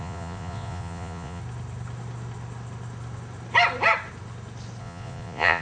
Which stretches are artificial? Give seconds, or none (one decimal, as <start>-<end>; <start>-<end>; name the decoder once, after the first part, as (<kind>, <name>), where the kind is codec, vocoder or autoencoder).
0.0-1.4 (vocoder, Vocos); 4.8-5.6

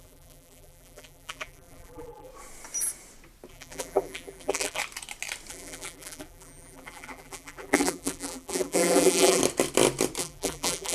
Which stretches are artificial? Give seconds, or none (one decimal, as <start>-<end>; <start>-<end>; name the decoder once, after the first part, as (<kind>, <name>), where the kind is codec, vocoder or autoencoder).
0.0-2.3 (vocoder, BigVGAN v2); 3.5-4.8; 5.5-9.4; 10.2-10.9

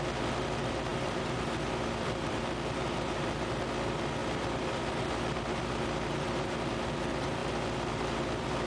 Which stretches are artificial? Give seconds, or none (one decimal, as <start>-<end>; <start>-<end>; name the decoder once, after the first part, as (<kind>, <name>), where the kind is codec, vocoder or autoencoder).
0.9-2.4 (vocoder, BigVGAN v2); 4.2-5.6

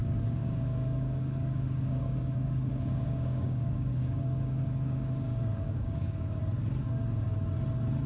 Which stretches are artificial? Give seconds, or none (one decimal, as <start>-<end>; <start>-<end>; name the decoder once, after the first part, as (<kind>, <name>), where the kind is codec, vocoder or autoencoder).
0.0-6.4 (codec, DAC)